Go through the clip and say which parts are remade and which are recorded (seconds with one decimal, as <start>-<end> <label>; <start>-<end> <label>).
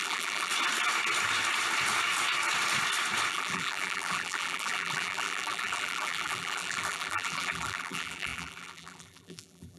0.0-0.5 remade; 0.5-3.3 recorded; 3.3-9.8 remade